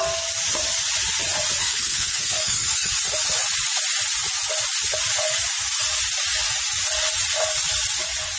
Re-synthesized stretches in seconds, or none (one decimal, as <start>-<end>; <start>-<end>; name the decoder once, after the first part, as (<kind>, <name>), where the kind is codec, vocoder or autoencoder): 1.6-2.9 (codec, SNAC)